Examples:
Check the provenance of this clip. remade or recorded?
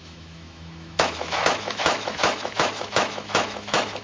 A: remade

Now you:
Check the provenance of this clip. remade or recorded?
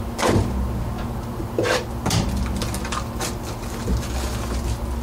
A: recorded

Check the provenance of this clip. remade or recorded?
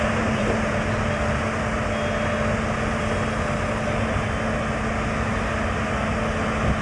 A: recorded